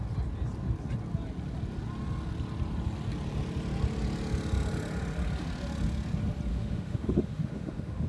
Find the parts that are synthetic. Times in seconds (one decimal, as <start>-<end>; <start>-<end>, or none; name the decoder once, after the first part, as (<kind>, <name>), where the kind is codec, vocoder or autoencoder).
6.5-8.1 (autoencoder, DAC-VAE)